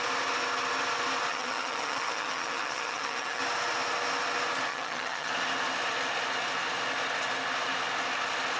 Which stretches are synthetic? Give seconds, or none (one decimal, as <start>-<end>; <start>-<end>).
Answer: 1.3-3.4; 4.7-5.3